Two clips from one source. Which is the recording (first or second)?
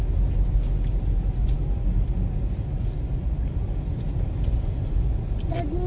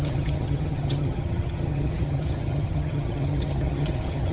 first